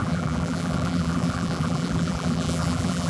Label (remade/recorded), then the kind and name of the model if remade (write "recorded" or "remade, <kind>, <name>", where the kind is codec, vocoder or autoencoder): remade, vocoder, BigVGAN v2